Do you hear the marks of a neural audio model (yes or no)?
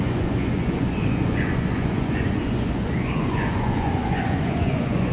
yes